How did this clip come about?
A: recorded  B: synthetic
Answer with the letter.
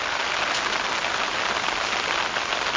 A